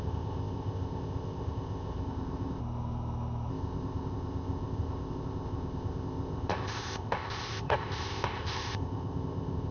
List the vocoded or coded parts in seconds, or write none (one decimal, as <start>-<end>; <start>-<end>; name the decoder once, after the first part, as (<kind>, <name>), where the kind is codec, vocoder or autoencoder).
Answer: 0.0-2.6 (codec, ZipCodec); 3.5-9.7